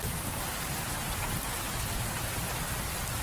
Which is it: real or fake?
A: real